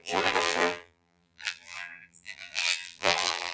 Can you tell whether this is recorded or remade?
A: remade